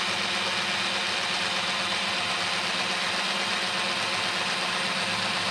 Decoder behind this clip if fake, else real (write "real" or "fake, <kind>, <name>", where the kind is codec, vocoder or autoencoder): real